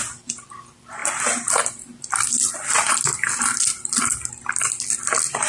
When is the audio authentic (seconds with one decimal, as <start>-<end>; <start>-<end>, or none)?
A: 0.0-5.5